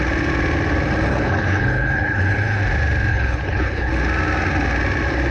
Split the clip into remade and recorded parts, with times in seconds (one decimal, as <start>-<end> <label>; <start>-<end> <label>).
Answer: 0.0-1.1 recorded; 1.1-2.6 remade; 2.6-3.1 recorded; 3.1-3.9 remade; 3.9-5.3 recorded